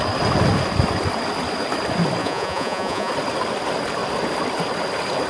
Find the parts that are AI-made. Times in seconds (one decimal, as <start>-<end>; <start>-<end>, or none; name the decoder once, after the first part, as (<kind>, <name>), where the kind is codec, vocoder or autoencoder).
2.2-3.1 (vocoder, Vocos)